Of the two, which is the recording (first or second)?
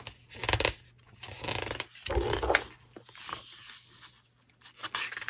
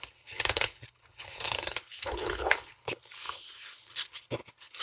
first